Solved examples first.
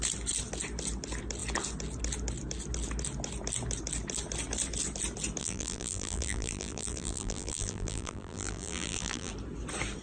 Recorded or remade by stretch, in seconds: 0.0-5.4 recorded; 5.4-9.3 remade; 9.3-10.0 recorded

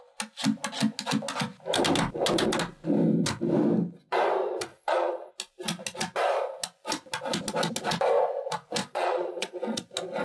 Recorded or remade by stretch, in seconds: 0.0-4.7 recorded; 4.7-5.3 remade; 5.3-8.8 recorded; 8.8-9.6 remade; 9.6-10.2 recorded

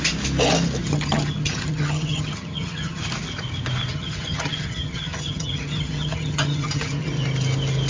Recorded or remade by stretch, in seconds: 0.0-0.8 recorded; 0.8-3.0 remade; 3.0-3.9 recorded; 3.9-7.1 remade; 7.1-7.9 recorded

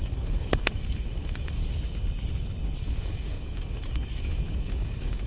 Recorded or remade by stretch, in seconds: 0.0-1.6 remade; 1.6-2.8 recorded; 2.8-5.3 remade

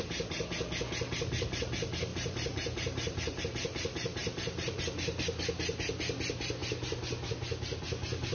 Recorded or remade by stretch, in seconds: 0.0-2.1 recorded; 2.1-3.4 remade; 3.4-4.2 recorded; 4.2-4.8 remade; 4.8-8.3 recorded